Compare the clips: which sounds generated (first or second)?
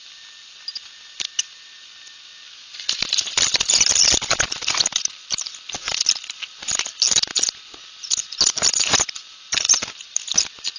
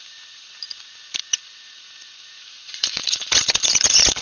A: second